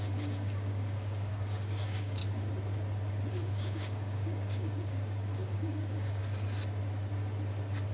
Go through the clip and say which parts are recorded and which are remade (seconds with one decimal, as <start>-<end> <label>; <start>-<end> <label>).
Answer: 0.0-2.2 remade; 2.2-3.3 recorded; 3.3-6.2 remade; 6.2-7.9 recorded

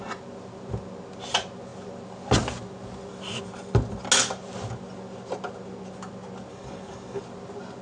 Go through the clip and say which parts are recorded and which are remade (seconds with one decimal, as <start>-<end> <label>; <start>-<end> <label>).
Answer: 0.0-6.5 recorded; 6.5-7.2 remade; 7.2-7.8 recorded